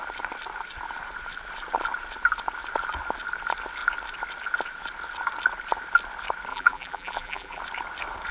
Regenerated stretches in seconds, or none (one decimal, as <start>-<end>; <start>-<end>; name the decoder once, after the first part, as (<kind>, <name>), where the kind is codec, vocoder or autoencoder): 6.5-7.6 (vocoder, BigVGAN v2)